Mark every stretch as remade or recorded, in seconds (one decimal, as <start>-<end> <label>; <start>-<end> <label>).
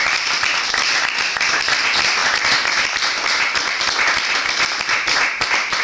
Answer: 0.0-5.8 recorded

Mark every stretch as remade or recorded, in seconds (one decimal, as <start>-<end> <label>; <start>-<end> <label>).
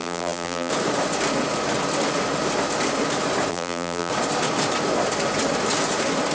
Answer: 0.0-0.7 remade; 0.7-3.5 recorded; 3.5-4.1 remade; 4.1-6.3 recorded